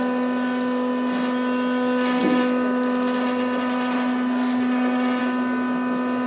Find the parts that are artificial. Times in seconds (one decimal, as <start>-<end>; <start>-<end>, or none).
none